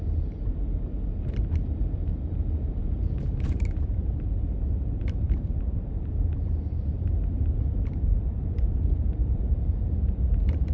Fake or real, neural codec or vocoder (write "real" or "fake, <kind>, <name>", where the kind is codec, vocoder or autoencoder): fake, vocoder, BigVGAN v2